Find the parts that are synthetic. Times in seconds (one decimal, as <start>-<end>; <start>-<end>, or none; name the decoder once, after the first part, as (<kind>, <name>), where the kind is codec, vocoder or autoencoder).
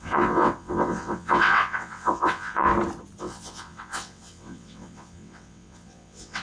0.0-2.7 (vocoder, WaveNeXt); 3.2-6.4